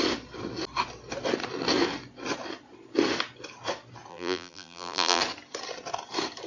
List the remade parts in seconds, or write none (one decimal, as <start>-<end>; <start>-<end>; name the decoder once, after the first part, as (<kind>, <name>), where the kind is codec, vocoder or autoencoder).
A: 4.1-5.2 (vocoder, BigVGAN v2)